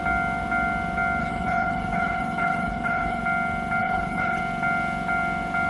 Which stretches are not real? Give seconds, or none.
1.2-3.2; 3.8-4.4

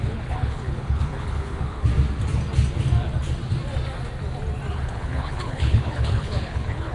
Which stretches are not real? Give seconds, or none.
0.0-1.9; 4.7-6.9

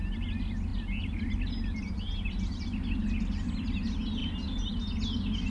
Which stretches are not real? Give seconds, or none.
none

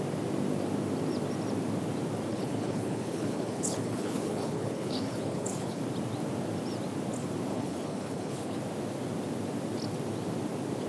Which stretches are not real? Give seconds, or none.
2.3-5.8; 7.5-8.6

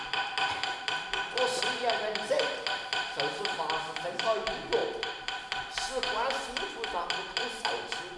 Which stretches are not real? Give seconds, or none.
none